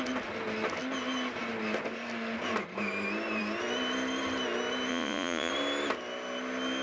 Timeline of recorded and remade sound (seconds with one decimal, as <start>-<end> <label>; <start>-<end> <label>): 0.0-4.9 recorded; 4.9-5.5 remade; 5.5-6.8 recorded

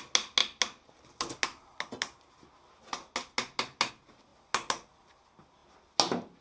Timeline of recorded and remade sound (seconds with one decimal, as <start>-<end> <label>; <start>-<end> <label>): 0.0-6.4 recorded